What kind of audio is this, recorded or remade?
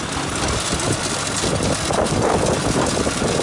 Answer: recorded